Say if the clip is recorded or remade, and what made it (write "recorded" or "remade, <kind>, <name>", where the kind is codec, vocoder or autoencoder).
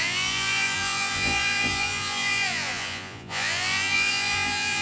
remade, vocoder, Vocos